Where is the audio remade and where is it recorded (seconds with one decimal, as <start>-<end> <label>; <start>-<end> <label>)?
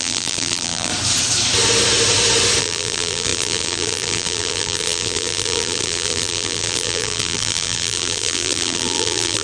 0.0-0.9 remade; 0.9-2.6 recorded; 2.6-9.4 remade